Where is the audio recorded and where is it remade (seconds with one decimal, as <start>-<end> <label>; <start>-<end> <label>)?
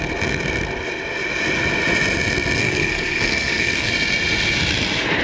0.0-2.6 recorded; 2.6-3.9 remade; 3.9-5.2 recorded